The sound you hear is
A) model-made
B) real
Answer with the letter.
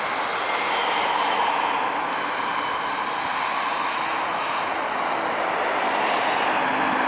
B